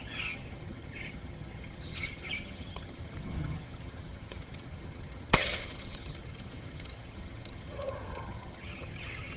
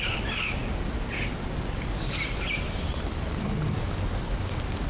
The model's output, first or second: first